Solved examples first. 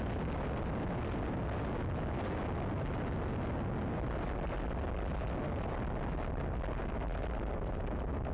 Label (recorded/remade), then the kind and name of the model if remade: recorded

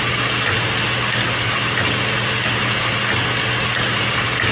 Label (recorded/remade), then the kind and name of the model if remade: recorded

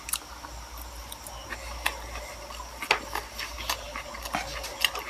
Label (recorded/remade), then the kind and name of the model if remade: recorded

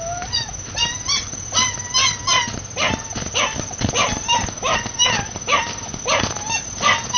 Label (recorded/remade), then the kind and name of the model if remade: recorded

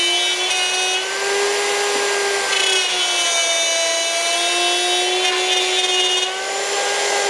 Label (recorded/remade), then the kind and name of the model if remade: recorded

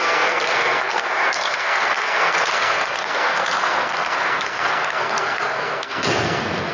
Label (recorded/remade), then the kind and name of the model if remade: remade, codec, SNAC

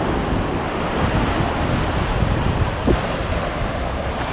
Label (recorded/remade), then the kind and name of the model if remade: recorded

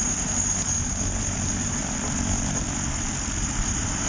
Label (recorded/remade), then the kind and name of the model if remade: recorded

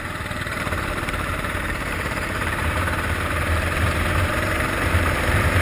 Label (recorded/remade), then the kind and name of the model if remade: remade, vocoder, BigVGAN v2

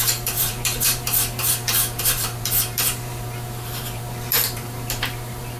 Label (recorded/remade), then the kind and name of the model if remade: remade, vocoder, BigVGAN v2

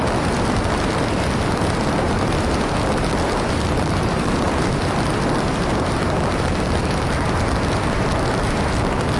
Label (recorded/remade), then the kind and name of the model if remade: recorded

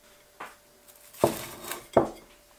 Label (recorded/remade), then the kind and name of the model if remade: recorded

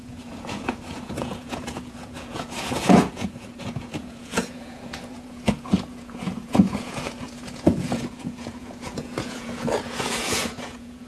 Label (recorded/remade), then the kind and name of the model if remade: remade, vocoder, Vocos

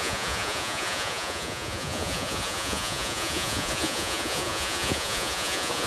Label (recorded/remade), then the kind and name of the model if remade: remade, vocoder, Vocos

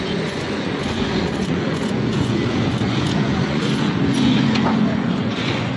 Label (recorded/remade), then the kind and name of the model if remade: remade, vocoder, Vocos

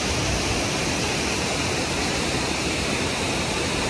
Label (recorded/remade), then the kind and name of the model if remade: recorded